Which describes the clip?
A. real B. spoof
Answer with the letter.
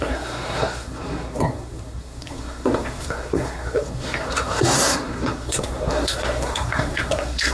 B